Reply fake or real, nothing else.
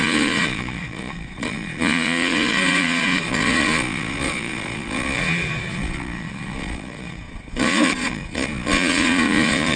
fake